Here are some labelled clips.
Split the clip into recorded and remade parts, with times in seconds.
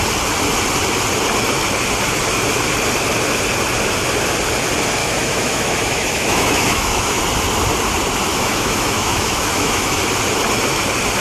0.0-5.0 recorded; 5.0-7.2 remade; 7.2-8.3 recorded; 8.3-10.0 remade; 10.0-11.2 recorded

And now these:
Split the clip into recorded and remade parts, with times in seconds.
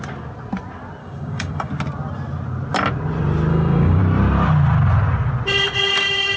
0.0-1.0 recorded; 1.0-1.7 remade; 1.7-3.5 recorded; 3.5-4.0 remade; 4.0-6.4 recorded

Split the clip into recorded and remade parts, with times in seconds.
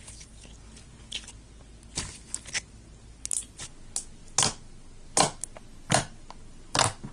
0.0-7.1 recorded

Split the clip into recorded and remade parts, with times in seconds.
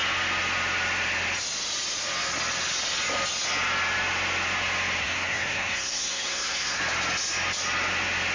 0.0-5.0 recorded; 5.0-6.8 remade; 6.8-8.3 recorded